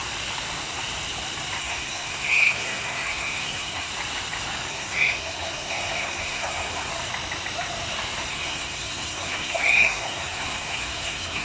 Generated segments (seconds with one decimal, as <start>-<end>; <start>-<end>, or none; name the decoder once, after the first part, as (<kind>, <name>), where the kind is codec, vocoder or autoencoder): 1.6-3.9 (codec, SNAC); 4.7-6.9; 8.3-11.4